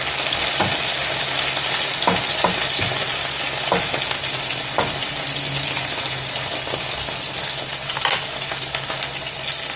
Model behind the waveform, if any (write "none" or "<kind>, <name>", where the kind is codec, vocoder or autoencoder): none